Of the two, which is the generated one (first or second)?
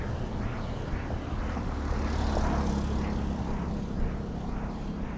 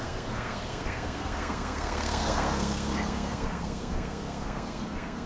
second